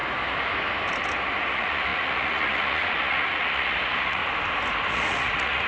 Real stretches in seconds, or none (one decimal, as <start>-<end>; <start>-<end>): 0.0-1.5; 4.2-4.9